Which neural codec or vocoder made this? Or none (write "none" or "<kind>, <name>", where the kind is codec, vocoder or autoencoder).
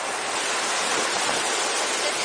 none